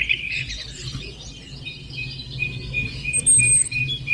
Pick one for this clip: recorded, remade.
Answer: recorded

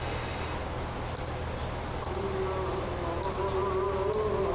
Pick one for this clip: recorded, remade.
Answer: recorded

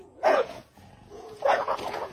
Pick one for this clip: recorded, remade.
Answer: remade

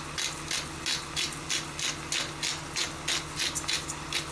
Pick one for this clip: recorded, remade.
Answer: recorded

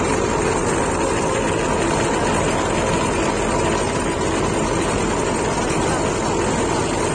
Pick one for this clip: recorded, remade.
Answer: recorded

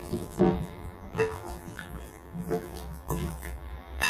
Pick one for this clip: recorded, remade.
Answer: remade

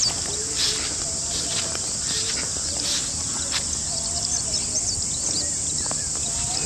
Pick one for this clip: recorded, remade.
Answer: recorded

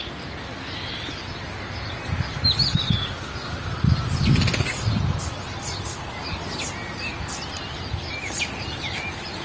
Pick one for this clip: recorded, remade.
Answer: recorded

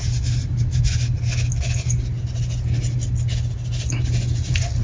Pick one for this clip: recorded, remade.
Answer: recorded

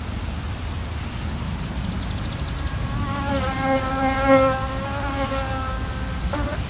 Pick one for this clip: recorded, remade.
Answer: recorded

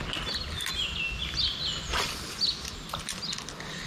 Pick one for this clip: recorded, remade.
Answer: recorded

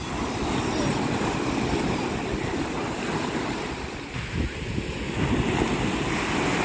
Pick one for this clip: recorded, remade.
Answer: recorded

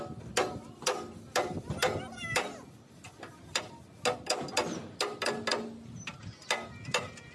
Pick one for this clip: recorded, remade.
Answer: recorded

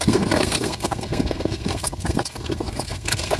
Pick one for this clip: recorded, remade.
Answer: remade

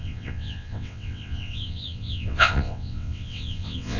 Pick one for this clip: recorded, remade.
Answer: remade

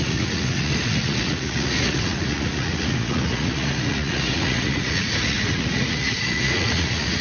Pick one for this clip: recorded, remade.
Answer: remade